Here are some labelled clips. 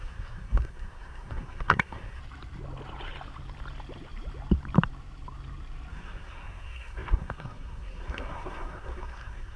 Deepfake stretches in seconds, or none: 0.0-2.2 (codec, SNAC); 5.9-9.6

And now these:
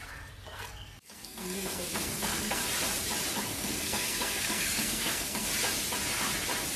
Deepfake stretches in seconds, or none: 0.0-2.6 (codec, SNAC); 3.3-5.5

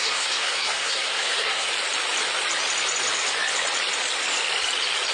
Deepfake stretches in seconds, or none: 0.0-1.7 (codec, SNAC)

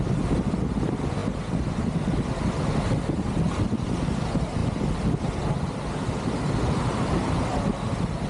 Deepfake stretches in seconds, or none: none

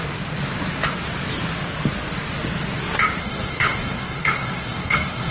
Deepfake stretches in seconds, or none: 3.2-5.3 (codec, SNAC)